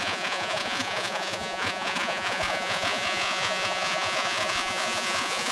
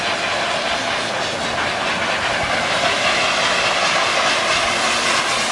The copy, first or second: first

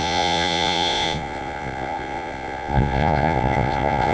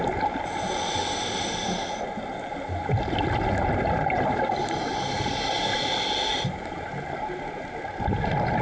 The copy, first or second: first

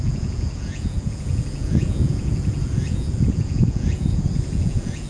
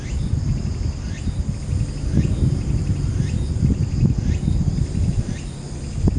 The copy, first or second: first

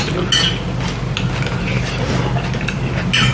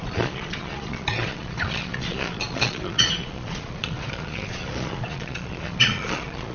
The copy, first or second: second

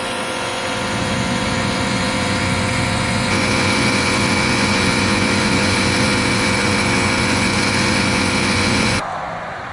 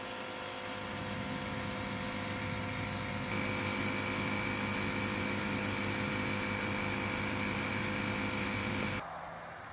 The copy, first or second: first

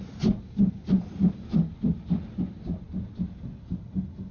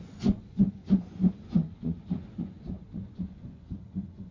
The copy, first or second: second